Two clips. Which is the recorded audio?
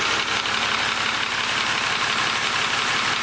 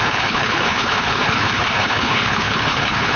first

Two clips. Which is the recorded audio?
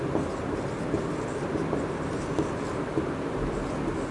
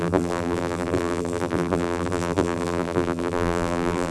first